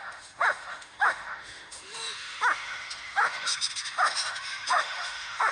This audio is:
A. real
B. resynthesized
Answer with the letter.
B